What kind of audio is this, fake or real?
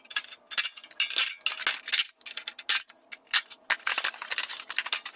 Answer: real